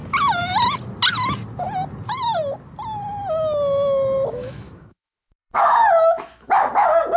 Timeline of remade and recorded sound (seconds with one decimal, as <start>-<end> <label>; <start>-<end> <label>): 0.0-4.3 recorded; 4.3-6.7 remade; 6.7-7.2 recorded